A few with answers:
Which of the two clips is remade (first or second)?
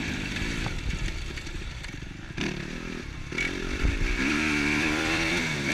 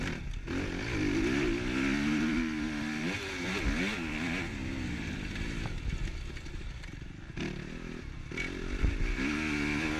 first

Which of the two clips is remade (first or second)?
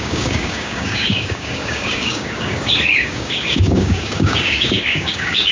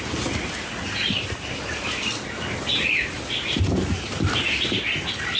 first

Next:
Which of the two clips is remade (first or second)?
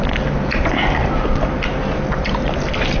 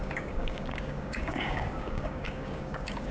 second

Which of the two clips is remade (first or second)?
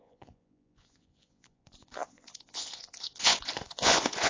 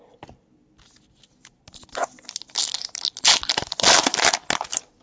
first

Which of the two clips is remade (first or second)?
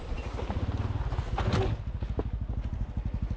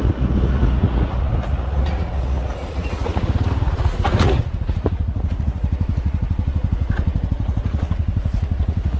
second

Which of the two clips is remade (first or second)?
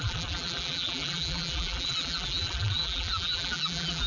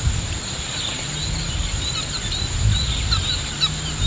first